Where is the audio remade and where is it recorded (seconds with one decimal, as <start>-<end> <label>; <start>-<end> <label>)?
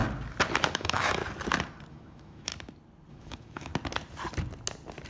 0.0-0.7 recorded; 0.7-1.2 remade; 1.2-1.9 recorded; 1.9-2.5 remade; 2.5-3.1 recorded; 3.1-3.7 remade; 3.7-5.1 recorded